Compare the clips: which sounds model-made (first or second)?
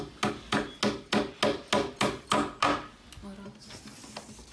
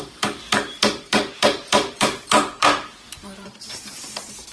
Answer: second